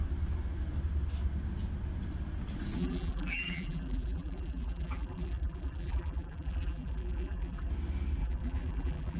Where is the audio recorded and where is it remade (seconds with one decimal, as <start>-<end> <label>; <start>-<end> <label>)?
0.0-2.8 recorded; 2.8-7.7 remade; 7.7-8.2 recorded; 8.2-9.2 remade